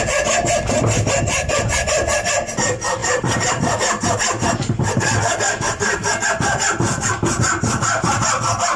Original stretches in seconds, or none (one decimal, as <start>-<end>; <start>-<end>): 0.0-3.0; 5.0-8.8